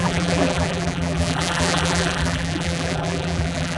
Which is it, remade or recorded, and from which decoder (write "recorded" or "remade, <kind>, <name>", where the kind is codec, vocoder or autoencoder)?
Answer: remade, vocoder, BigVGAN v2